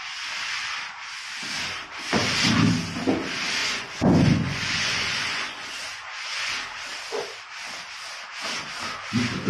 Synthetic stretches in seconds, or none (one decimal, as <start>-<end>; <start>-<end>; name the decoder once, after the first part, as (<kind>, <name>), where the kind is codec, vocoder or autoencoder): 3.6-6.5 (vocoder, Vocos)